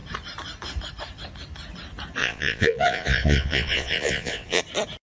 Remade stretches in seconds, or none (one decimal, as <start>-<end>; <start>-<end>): 2.2-4.6